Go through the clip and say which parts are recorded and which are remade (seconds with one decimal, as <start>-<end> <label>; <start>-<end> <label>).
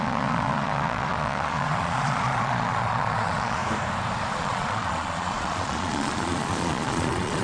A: 0.0-3.6 remade; 3.6-4.4 recorded; 4.4-7.4 remade